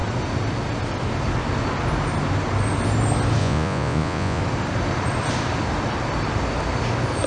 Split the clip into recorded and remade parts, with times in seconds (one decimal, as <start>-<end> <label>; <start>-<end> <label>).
0.0-3.4 recorded; 3.4-4.4 remade; 4.4-7.3 recorded